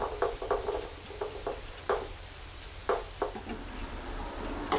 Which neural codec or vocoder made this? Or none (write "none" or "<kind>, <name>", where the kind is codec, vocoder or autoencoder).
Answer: vocoder, BigVGAN v2